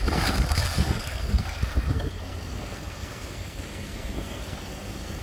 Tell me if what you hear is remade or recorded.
remade